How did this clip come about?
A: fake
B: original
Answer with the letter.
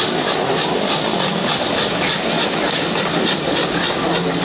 B